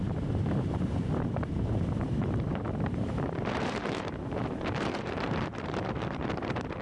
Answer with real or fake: fake